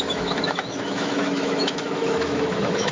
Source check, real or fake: fake